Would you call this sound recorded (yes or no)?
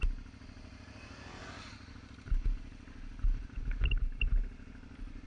yes